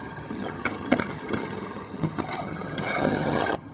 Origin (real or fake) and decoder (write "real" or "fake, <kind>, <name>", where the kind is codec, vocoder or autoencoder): fake, vocoder, HiFi-GAN